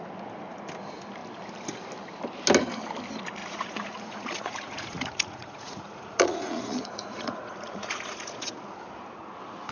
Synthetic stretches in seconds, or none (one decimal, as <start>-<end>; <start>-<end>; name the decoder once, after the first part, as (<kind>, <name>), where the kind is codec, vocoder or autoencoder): 3.4-8.5 (vocoder, Vocos)